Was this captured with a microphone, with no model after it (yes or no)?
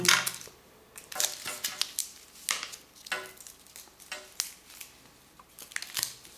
yes